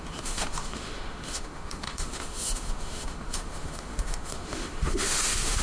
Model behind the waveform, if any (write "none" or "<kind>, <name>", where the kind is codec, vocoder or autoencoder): autoencoder, DAC-VAE